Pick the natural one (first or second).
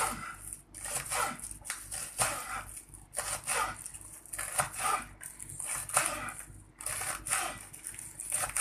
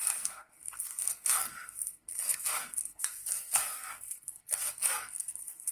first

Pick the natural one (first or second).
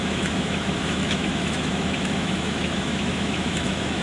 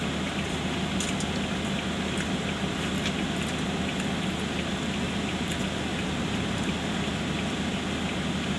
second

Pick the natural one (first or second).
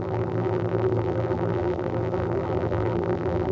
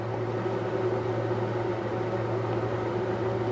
second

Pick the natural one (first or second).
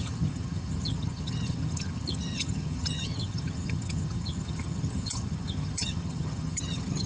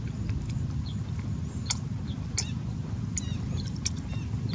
second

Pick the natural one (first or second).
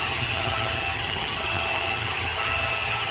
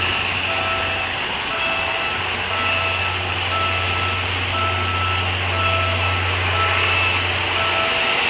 second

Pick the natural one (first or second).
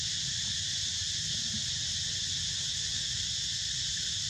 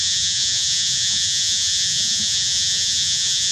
first